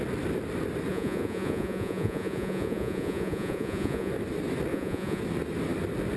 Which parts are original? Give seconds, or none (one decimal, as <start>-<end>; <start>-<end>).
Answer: 0.0-0.9; 4.1-4.7; 5.2-6.2